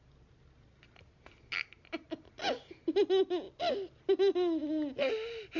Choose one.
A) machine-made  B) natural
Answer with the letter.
B